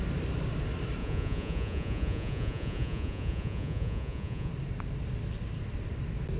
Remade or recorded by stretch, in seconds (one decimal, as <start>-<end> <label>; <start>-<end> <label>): 0.0-1.0 recorded; 1.0-4.5 remade; 4.5-6.4 recorded